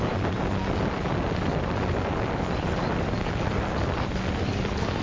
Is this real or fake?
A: real